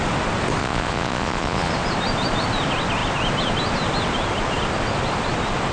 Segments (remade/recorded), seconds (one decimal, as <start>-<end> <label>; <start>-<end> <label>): 0.0-0.6 recorded; 0.6-1.7 remade; 1.7-5.7 recorded